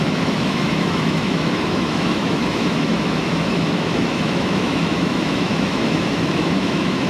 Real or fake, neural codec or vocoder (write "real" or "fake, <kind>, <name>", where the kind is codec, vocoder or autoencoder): fake, autoencoder, DAC-VAE